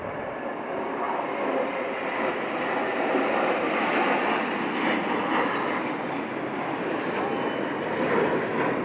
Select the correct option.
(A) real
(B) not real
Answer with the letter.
A